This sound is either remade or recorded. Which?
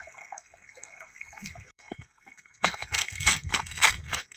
remade